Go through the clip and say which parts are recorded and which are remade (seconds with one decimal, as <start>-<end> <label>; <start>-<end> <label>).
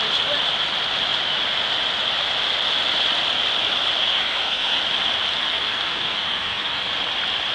0.0-4.0 recorded; 4.0-4.8 remade; 4.8-5.4 recorded; 5.4-6.9 remade; 6.9-7.5 recorded